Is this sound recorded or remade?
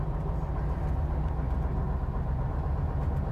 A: recorded